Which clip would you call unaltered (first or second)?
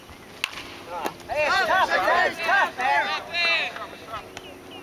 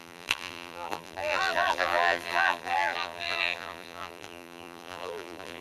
first